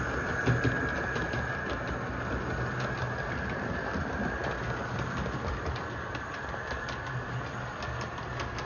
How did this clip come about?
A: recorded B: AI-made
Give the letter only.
A